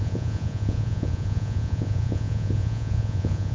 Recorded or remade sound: remade